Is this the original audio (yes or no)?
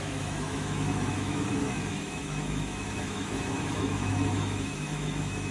no